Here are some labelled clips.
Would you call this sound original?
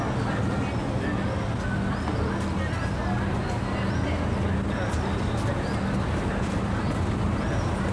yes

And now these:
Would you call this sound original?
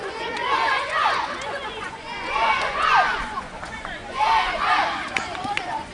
no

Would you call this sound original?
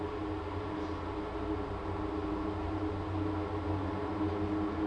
yes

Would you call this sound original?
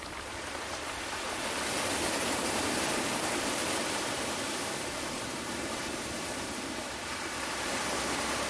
no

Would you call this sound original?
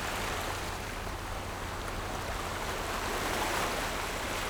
yes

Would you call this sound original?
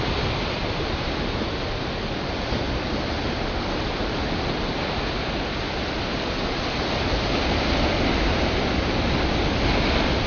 yes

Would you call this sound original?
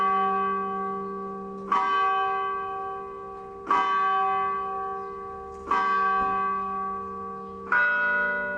yes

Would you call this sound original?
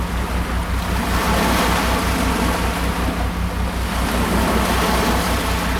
yes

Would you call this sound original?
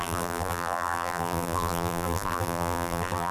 no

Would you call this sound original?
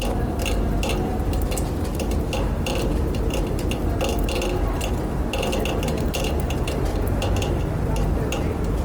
yes